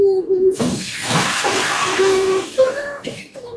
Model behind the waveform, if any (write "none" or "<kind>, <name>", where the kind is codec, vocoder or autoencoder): codec, DAC